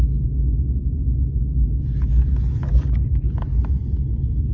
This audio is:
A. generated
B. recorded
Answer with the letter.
B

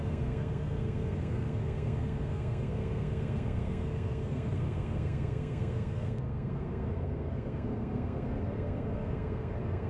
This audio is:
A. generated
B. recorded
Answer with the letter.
A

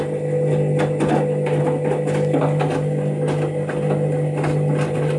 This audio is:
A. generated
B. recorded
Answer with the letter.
B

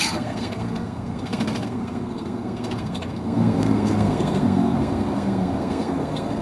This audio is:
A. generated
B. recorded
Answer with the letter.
A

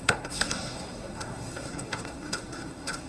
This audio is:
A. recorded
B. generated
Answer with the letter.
B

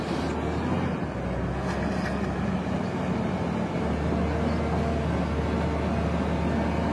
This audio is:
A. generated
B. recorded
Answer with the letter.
B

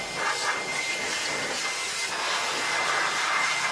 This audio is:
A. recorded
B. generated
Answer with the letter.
A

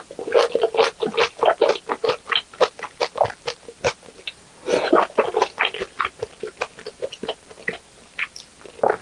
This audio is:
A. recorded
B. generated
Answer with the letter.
A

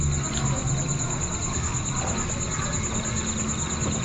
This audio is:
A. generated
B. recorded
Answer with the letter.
B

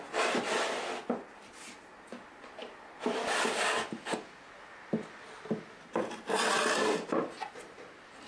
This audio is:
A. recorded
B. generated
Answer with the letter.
A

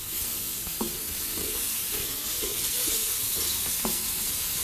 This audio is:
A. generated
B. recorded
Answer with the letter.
A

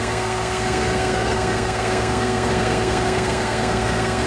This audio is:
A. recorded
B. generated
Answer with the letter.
B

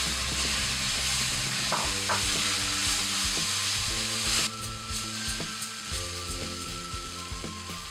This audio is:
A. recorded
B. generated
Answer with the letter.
A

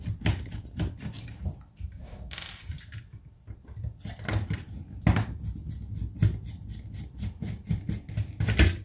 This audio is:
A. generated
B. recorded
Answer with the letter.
B